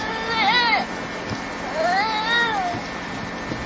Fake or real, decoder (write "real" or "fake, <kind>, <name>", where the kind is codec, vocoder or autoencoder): real